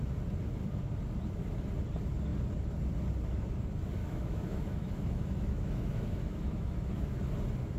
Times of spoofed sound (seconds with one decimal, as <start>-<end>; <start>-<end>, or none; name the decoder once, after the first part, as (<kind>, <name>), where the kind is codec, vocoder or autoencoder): 4.0-7.3 (autoencoder, DAC-VAE)